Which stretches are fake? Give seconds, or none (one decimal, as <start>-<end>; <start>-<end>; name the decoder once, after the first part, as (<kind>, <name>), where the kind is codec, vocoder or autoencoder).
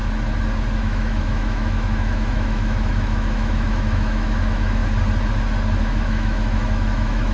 0.8-4.8 (autoencoder, DAC-VAE); 5.8-7.3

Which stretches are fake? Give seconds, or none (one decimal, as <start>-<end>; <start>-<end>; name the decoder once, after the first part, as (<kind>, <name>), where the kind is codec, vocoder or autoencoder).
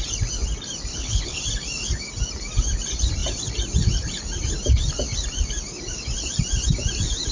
0.9-1.4 (codec, HILCodec)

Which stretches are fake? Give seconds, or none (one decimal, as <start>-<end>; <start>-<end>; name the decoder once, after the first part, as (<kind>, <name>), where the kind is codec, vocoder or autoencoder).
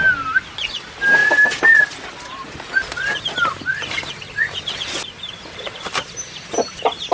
none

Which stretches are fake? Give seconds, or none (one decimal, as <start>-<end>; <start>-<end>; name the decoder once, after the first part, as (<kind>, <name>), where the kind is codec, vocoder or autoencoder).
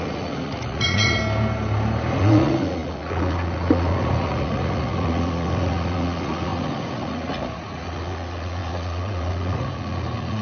0.0-1.2 (vocoder, Vocos); 2.2-10.4